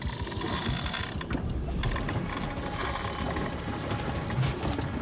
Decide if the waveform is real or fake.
real